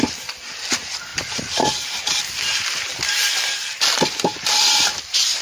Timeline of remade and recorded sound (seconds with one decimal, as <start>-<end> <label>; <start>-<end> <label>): 0.0-5.4 recorded